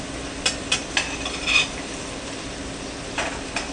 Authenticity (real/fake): real